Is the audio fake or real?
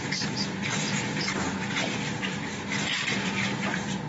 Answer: fake